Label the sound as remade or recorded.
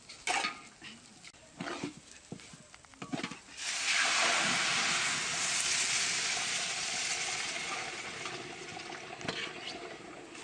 recorded